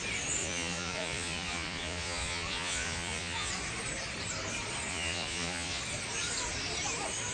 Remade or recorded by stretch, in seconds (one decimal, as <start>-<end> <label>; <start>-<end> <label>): 0.0-0.4 recorded; 0.4-3.5 remade; 3.5-4.9 recorded; 4.9-5.8 remade; 5.8-7.3 recorded